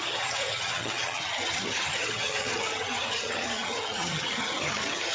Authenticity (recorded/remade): remade